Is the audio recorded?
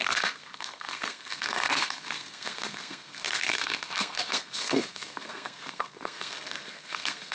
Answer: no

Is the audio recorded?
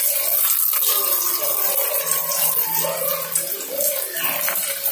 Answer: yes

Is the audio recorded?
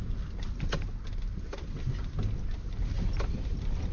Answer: yes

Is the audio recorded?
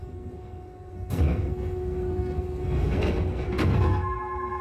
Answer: no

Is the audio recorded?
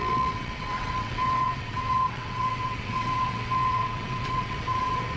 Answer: no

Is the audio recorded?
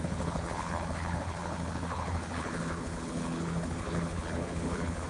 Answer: no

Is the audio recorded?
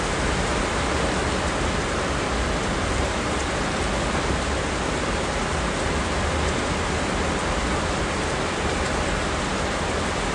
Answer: yes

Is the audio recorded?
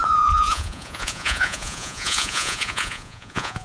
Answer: no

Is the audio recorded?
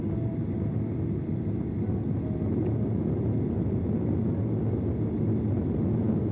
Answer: yes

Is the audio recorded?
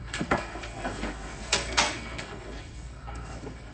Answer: no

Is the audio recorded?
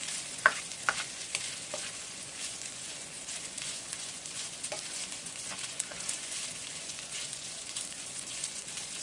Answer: no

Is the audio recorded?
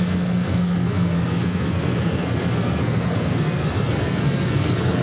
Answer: no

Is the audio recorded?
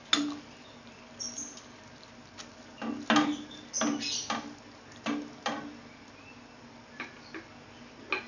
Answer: yes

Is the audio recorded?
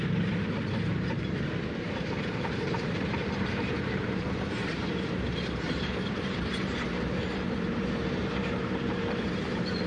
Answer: no